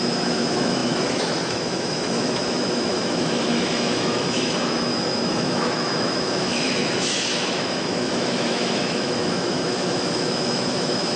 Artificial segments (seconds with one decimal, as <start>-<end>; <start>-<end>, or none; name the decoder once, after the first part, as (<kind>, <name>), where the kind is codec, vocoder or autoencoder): 0.0-11.2 (autoencoder, DAC-VAE)